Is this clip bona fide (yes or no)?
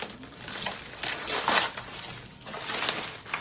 yes